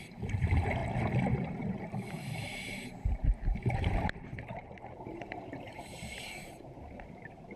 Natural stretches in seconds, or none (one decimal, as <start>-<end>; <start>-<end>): 0.8-1.6